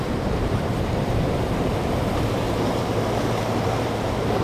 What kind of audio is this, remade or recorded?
remade